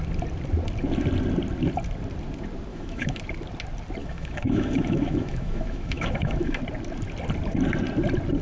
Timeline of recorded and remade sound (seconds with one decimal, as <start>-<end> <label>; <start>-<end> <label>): 0.0-2.7 recorded; 2.7-3.2 remade; 3.2-4.0 recorded; 4.0-6.6 remade; 6.6-8.4 recorded